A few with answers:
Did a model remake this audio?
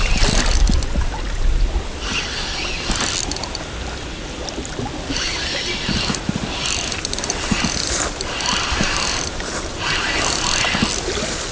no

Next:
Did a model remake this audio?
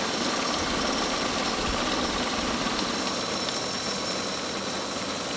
no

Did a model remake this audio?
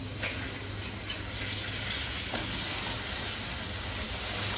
no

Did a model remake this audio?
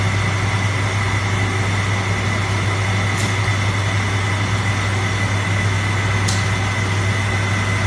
no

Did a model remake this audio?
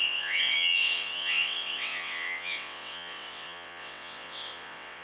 yes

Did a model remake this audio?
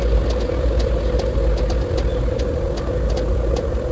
no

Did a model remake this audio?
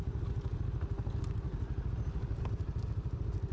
no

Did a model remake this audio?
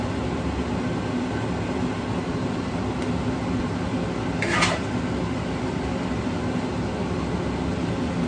no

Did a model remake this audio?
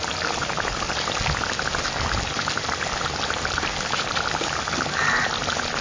no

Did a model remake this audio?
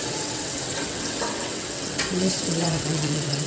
yes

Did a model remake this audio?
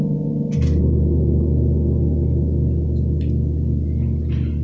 no